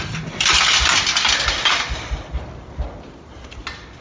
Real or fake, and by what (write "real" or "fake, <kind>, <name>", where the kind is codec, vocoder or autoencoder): real